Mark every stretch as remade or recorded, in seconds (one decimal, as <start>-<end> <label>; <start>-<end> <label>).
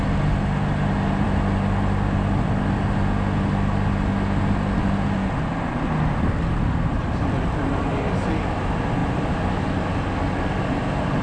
0.0-7.0 recorded; 7.0-7.7 remade; 7.7-11.2 recorded